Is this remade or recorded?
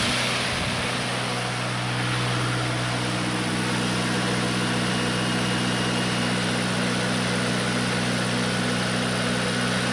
recorded